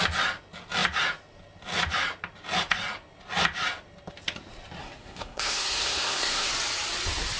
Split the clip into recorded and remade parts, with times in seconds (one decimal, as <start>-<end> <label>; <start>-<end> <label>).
0.0-4.8 recorded; 4.8-6.5 remade; 6.5-7.4 recorded